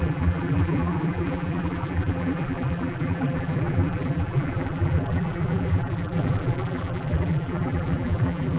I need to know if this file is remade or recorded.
remade